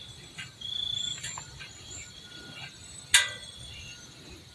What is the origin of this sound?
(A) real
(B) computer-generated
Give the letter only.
A